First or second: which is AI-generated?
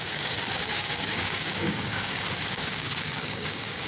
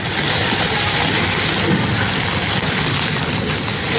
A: first